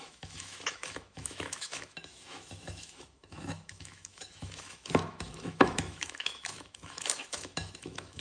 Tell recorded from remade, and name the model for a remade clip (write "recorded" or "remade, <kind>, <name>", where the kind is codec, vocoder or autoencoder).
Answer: remade, autoencoder, DAC-VAE